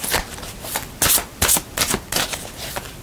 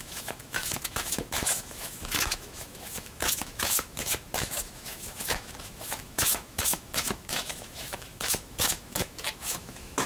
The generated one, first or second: second